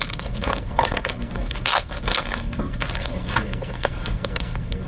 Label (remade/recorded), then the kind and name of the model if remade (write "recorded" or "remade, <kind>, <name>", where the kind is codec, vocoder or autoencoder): remade, codec, SNAC